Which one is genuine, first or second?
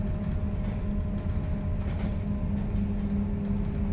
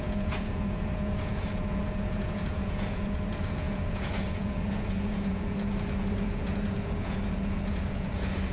first